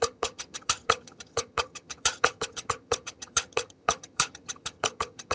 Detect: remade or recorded remade